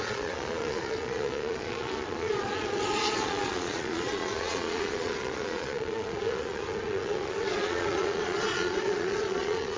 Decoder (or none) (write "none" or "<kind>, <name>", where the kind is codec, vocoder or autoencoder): vocoder, Vocos